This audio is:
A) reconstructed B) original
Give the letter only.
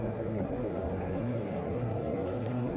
A